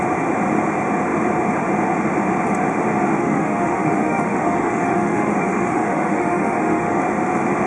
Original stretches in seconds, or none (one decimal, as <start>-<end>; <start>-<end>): 0.0-3.2; 7.0-7.7